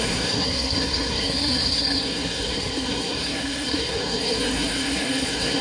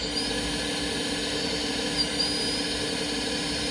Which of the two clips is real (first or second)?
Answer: second